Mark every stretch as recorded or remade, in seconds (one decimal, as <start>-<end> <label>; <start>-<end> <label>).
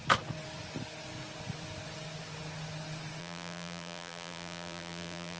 0.0-3.2 recorded; 3.2-5.4 remade